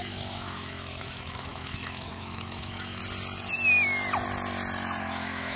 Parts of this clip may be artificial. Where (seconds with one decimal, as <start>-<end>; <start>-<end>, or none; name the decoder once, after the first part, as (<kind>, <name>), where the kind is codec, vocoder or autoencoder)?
0.0-3.0 (autoencoder, DAC-VAE); 5.0-5.6